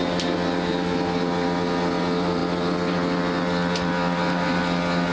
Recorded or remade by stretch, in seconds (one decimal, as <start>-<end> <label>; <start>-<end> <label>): 0.0-5.1 recorded